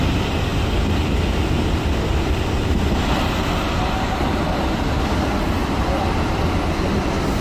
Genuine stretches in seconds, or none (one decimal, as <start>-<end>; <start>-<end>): 0.0-5.6; 6.4-7.4